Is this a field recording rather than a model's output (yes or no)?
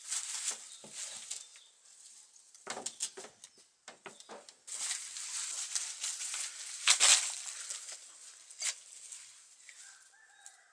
yes